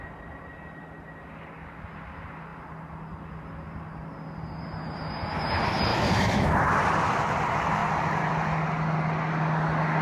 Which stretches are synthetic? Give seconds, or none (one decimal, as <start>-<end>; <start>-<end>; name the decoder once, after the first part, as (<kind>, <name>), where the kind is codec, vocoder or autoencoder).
5.9-6.6 (autoencoder, DAC-VAE)